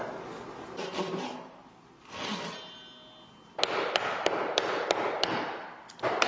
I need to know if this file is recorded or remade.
recorded